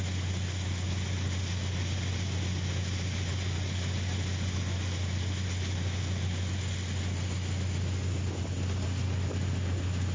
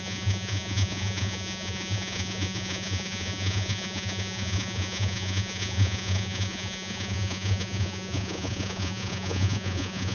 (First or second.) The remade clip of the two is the second